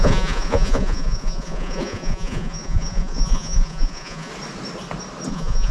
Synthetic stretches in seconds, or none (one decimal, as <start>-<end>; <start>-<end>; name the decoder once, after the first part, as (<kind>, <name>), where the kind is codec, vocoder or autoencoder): 0.0-4.3 (vocoder, Vocos); 5.3-5.7